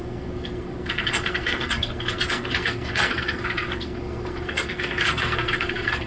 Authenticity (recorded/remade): remade